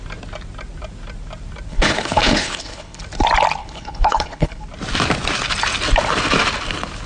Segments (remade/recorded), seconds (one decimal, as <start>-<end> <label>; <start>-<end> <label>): 0.0-1.7 recorded; 1.7-3.0 remade; 3.0-3.6 recorded; 3.6-4.6 remade; 4.6-7.1 recorded